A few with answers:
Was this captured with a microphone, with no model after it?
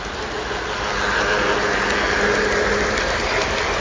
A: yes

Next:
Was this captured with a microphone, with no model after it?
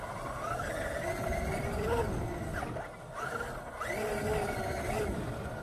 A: yes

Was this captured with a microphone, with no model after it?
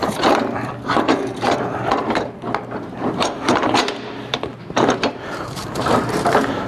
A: no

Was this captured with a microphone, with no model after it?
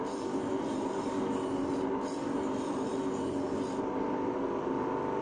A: yes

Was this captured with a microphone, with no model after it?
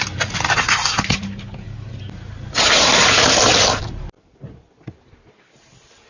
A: yes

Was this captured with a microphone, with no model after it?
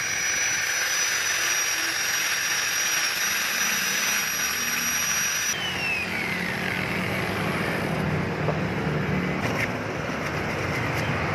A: yes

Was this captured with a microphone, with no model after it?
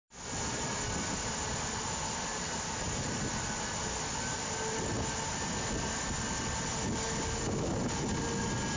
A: yes